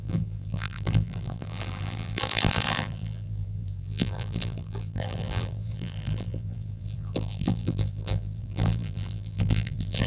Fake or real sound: fake